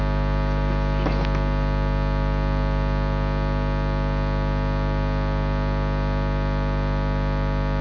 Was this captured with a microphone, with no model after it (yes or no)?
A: yes